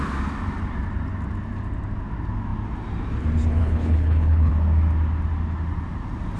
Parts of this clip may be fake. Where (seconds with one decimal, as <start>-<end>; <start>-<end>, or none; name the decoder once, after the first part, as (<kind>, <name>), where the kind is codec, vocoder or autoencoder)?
3.6-4.5 (codec, HILCodec)